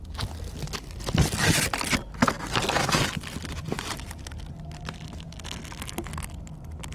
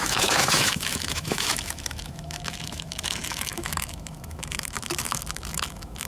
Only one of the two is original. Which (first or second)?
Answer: first